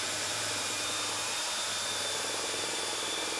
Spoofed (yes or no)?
yes